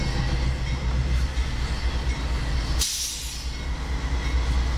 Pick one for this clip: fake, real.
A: real